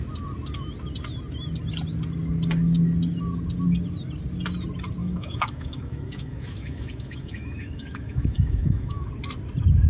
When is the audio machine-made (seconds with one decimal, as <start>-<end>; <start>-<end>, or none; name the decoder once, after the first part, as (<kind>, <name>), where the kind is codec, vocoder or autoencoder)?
5.0-9.1 (autoencoder, DAC-VAE)